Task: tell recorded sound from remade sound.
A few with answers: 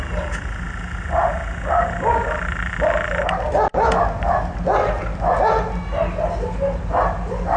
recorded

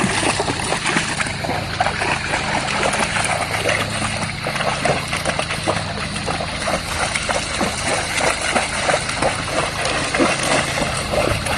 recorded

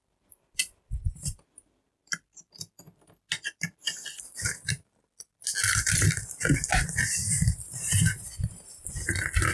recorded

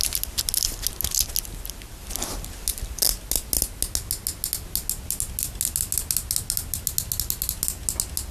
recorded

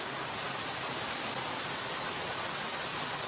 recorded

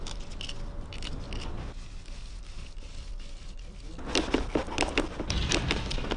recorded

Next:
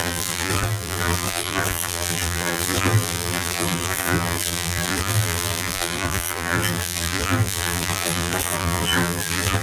remade